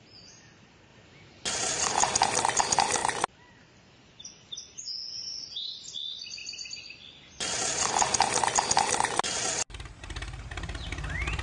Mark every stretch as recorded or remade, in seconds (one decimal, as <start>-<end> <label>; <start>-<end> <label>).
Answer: 0.0-11.4 recorded